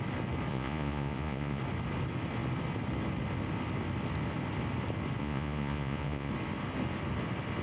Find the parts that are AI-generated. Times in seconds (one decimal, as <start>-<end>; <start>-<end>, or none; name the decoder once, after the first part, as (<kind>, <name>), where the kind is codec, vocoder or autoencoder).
0.5-1.6 (vocoder, Vocos); 5.2-6.3